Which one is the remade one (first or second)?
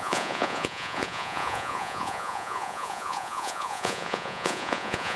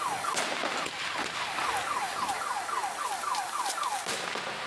first